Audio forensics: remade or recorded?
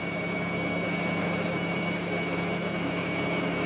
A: remade